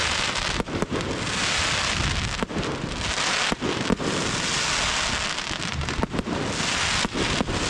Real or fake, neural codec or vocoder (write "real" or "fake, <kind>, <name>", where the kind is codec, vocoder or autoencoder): real